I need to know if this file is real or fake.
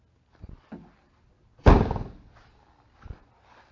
real